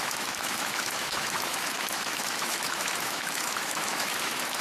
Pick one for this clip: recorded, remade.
remade